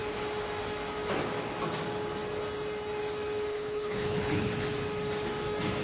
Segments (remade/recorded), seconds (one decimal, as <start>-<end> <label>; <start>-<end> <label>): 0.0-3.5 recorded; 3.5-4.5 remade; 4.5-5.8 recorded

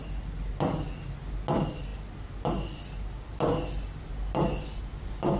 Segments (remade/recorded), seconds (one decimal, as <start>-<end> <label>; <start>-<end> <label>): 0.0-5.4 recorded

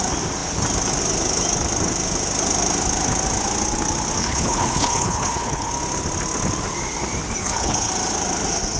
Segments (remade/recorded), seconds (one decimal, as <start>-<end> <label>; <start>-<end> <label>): 0.0-4.2 recorded; 4.2-5.7 remade; 5.7-7.4 recorded; 7.4-7.9 remade; 7.9-8.8 recorded